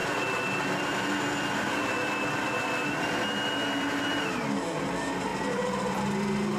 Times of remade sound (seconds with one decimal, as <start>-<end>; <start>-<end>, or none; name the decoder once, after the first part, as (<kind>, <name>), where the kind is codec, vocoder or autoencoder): none